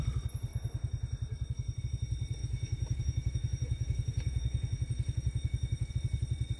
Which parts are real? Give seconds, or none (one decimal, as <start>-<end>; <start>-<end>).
0.0-2.4; 5.9-6.6